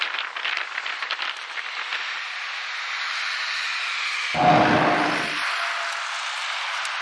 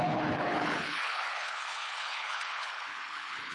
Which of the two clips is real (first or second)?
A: first